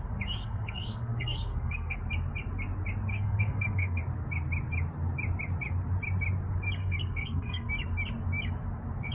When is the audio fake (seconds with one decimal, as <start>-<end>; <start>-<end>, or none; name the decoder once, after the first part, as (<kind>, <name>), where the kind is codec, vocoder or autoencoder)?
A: 0.4-2.0 (codec, SNAC); 3.1-4.0; 6.8-7.7